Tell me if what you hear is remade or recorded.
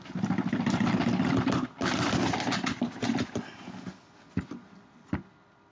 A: recorded